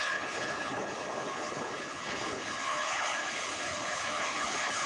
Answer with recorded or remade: remade